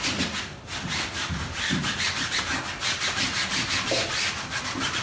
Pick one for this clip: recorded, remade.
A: remade